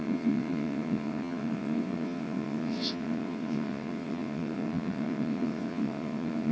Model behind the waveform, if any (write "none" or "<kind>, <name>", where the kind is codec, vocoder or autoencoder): vocoder, WaveNeXt